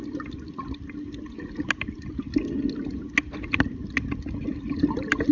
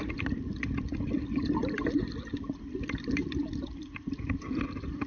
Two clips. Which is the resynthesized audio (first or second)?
second